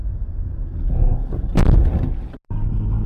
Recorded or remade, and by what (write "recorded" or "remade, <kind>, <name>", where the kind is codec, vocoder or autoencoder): recorded